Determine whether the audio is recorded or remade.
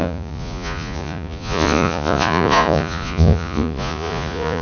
remade